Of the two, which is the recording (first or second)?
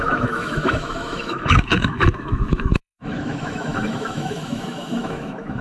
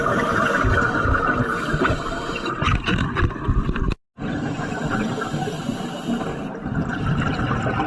second